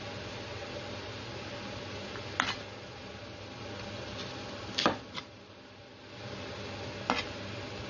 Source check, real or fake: real